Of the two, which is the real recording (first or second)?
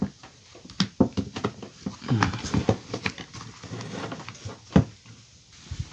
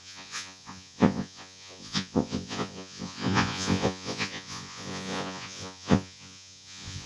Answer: first